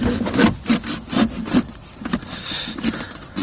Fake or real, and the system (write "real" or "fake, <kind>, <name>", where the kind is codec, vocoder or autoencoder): real